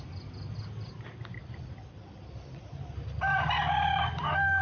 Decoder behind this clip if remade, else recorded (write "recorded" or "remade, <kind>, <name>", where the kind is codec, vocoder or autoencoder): recorded